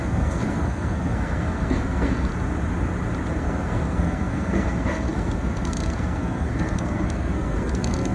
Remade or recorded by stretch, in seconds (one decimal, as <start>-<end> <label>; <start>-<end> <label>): 0.0-2.3 remade; 2.3-3.3 recorded; 3.3-8.1 remade

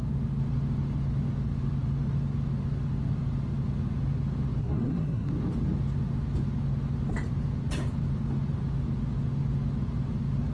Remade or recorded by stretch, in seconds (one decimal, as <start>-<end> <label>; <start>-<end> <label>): 0.0-4.6 recorded; 4.6-5.3 remade; 5.3-10.5 recorded

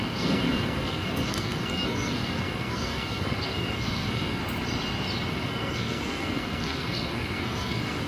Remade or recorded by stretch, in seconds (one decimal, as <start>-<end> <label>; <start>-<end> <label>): 0.0-4.4 remade; 4.4-5.3 recorded; 5.3-8.1 remade

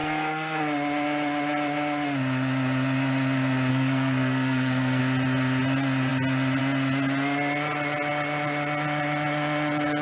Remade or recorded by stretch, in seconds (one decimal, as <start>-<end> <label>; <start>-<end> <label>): 0.0-0.6 remade; 0.6-3.7 recorded; 3.7-5.0 remade; 5.0-10.0 recorded

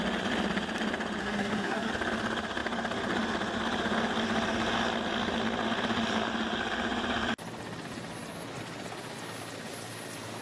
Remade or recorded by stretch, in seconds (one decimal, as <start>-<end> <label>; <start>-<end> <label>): 0.0-1.2 recorded; 1.2-1.9 remade; 1.9-10.4 recorded